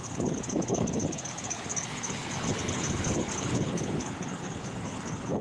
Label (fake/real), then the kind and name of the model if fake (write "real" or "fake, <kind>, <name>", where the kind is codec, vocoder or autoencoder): fake, codec, HILCodec